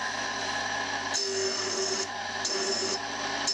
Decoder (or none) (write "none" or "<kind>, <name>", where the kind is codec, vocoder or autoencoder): none